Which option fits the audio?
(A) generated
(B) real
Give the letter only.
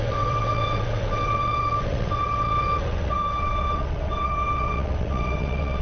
A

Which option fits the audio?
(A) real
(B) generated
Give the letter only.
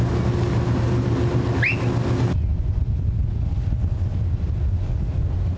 A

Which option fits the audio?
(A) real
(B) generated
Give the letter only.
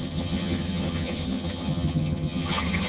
B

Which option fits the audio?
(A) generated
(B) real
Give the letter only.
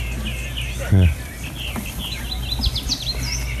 B